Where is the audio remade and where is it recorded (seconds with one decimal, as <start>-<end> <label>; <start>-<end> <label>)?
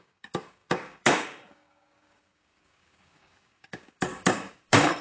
0.0-5.0 remade